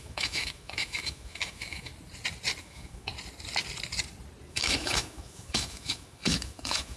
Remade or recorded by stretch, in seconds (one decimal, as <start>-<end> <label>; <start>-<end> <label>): 0.0-1.9 remade; 1.9-2.6 recorded; 2.6-3.1 remade; 3.1-4.5 recorded; 4.5-7.0 remade